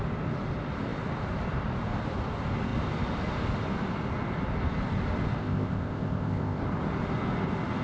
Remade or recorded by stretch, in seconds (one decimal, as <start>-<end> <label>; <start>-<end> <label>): 0.0-5.4 recorded; 5.4-6.6 remade; 6.6-7.8 recorded